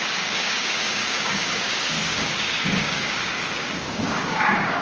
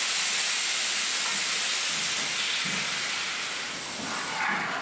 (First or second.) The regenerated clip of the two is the first